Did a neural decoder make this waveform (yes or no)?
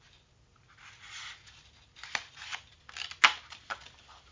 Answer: no